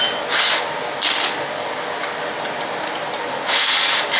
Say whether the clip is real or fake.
real